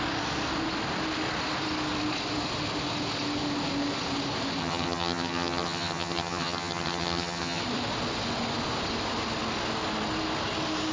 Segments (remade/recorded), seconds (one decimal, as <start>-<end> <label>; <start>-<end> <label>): 0.0-4.6 recorded; 4.6-7.6 remade; 7.6-10.9 recorded